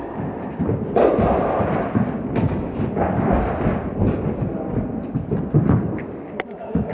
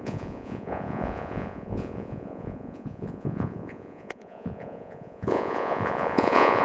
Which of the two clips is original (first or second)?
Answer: first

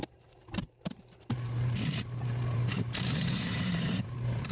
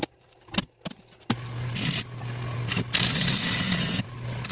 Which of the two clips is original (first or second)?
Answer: second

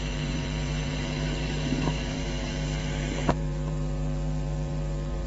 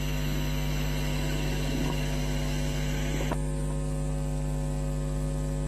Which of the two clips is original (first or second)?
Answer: second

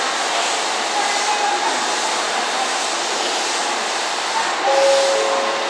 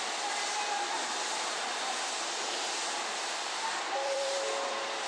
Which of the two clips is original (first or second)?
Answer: first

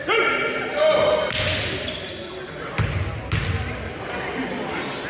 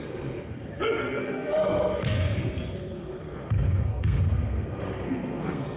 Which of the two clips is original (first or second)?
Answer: first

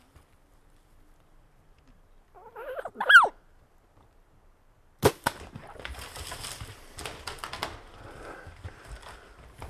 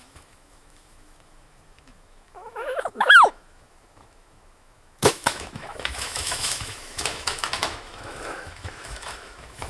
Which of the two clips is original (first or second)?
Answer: first